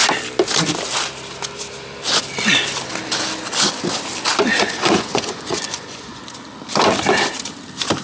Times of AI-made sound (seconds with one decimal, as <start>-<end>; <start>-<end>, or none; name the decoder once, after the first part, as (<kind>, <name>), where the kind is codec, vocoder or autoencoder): 4.5-6.2 (vocoder, Vocos)